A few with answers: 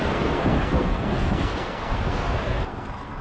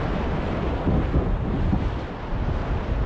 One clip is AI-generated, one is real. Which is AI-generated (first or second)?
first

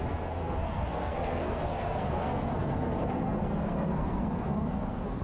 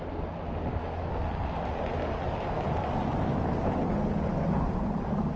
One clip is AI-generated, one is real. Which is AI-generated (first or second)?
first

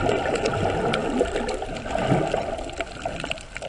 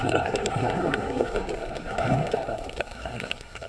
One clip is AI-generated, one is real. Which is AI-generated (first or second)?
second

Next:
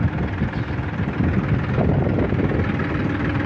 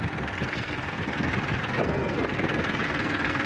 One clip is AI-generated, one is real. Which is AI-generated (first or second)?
second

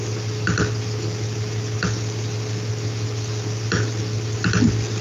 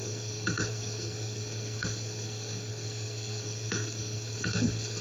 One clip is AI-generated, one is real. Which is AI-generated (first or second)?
second